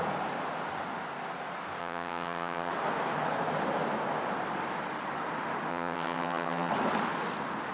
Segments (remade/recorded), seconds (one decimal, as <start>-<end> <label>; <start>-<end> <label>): 0.0-1.8 recorded; 1.8-2.7 remade; 2.7-5.7 recorded; 5.7-6.7 remade; 6.7-7.7 recorded